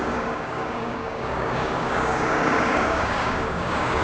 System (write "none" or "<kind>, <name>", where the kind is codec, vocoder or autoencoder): codec, DAC